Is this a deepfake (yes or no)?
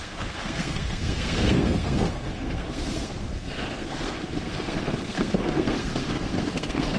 yes